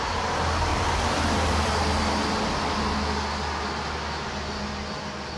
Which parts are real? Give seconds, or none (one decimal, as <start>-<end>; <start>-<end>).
0.0-0.7; 1.7-5.4